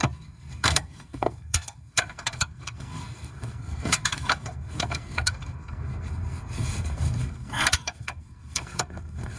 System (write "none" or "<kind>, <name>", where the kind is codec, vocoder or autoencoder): codec, SNAC